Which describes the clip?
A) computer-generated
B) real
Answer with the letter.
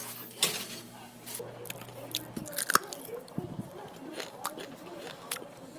B